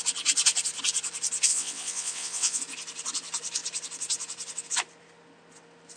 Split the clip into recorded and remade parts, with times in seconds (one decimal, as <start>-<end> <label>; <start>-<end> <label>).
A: 0.0-1.5 recorded; 1.5-2.6 remade; 2.6-6.0 recorded